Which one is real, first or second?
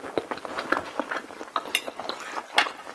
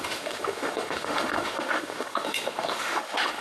first